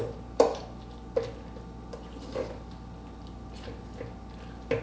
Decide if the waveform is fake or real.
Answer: real